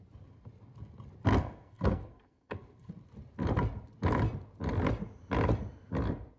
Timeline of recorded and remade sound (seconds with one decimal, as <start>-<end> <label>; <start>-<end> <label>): 0.0-1.4 recorded; 1.4-2.9 remade; 2.9-6.4 recorded